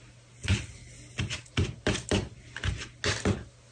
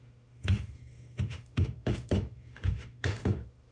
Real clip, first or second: first